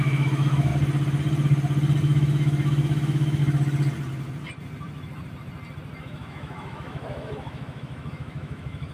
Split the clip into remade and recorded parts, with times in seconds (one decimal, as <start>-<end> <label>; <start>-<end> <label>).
0.0-0.7 remade; 0.7-2.0 recorded; 2.0-3.4 remade; 3.4-6.0 recorded; 6.0-8.9 remade